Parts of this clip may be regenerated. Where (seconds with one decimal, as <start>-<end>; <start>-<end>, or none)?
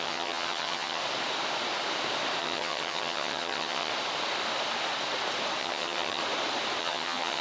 0.0-1.0; 2.4-3.9; 5.6-6.2; 6.8-7.4